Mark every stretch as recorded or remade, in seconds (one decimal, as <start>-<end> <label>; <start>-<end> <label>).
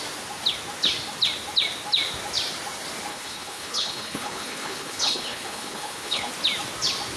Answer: 0.0-3.1 recorded; 3.1-6.3 remade; 6.3-7.2 recorded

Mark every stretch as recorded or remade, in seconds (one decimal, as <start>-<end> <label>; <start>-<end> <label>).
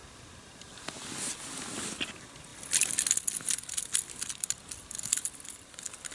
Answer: 0.0-6.1 recorded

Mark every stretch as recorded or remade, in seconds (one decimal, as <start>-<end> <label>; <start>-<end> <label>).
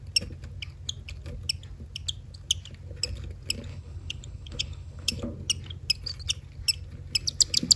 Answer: 0.0-3.7 recorded; 3.7-5.2 remade; 5.2-7.8 recorded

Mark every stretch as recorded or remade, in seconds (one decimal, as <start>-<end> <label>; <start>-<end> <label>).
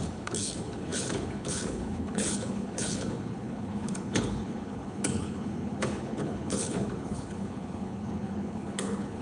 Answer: 0.0-9.2 remade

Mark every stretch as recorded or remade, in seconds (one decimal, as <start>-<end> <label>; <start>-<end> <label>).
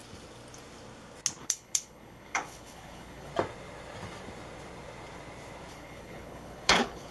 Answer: 0.0-1.4 recorded; 1.4-3.3 remade; 3.3-5.7 recorded; 5.7-7.1 remade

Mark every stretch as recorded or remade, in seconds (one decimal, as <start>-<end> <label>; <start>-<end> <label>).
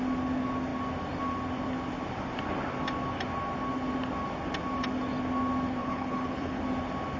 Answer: 0.0-5.8 recorded; 5.8-6.6 remade; 6.6-7.2 recorded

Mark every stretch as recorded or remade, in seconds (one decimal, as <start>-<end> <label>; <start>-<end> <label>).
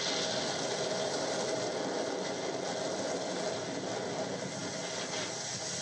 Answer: 0.0-5.8 recorded